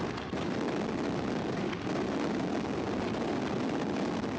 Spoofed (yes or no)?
no